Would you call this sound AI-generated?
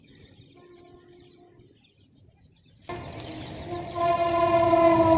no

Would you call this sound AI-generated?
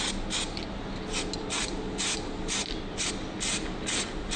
no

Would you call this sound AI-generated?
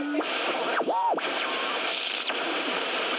yes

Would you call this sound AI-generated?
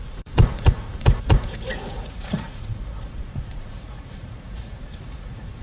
yes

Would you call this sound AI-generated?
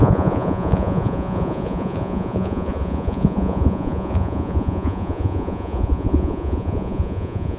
yes